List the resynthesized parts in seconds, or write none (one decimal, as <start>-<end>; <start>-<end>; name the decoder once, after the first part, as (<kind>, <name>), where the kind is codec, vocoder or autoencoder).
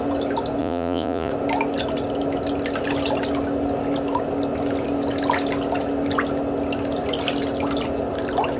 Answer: 0.6-1.3 (vocoder, Vocos)